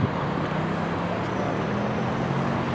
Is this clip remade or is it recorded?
recorded